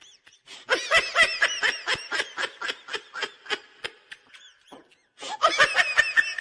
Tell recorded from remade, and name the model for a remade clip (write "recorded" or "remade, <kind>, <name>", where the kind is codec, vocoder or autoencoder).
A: recorded